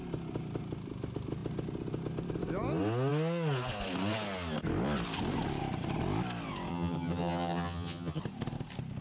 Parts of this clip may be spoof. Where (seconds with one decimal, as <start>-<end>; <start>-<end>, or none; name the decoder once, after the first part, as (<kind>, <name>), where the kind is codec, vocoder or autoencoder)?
6.7-8.2 (vocoder, HiFi-GAN)

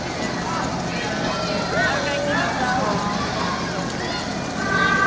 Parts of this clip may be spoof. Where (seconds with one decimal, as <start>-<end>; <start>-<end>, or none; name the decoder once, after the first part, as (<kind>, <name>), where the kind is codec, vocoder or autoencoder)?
none

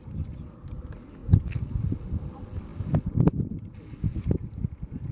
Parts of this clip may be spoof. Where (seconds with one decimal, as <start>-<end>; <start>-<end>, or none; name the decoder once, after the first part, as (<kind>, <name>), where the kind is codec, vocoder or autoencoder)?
none

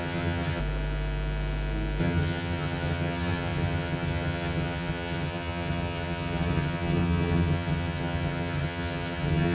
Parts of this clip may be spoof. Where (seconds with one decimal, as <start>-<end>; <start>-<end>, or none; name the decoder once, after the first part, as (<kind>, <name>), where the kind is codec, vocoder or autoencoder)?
0.0-0.6 (vocoder, HiFi-GAN); 2.0-9.5

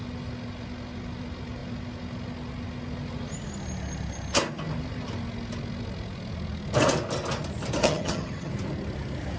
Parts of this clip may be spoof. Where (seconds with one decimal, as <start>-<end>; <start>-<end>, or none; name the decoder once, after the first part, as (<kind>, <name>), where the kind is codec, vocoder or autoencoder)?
7.8-8.5 (vocoder, HiFi-GAN)

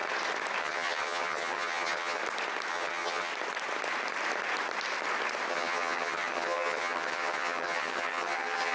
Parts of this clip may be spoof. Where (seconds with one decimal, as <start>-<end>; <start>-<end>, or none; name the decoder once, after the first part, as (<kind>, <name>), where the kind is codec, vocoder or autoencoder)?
0.6-2.2 (vocoder, HiFi-GAN); 2.7-3.3; 5.5-8.7

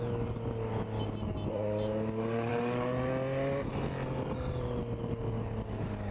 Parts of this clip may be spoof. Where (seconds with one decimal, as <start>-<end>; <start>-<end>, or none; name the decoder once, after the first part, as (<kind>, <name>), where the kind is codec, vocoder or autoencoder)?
none

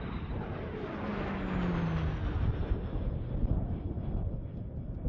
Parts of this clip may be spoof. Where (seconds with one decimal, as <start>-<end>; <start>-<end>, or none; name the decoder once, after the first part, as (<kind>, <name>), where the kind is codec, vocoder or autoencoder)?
none